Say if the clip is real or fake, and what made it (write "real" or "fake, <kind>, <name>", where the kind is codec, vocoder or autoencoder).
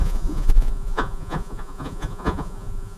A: fake, vocoder, Vocos